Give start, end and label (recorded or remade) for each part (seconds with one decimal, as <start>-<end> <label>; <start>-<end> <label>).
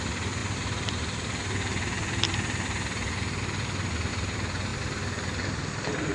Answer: 0.0-4.7 remade; 4.7-6.1 recorded